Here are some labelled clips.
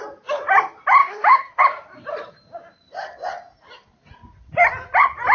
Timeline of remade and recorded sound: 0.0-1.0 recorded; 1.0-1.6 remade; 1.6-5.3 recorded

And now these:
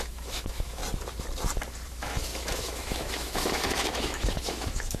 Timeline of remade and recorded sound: 0.0-0.8 remade; 0.8-1.9 recorded; 1.9-5.0 remade